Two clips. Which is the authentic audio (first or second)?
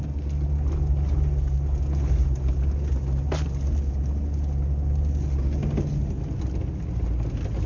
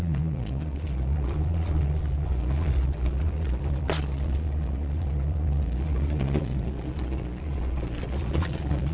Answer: first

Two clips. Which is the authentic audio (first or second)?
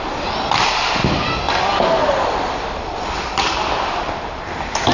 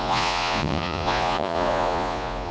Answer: first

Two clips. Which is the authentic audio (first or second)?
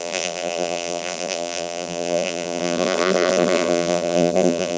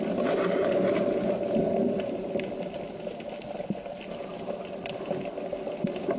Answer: second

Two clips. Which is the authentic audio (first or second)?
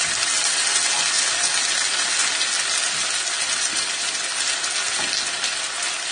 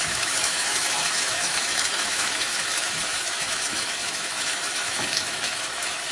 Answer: first